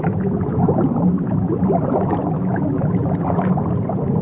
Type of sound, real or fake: real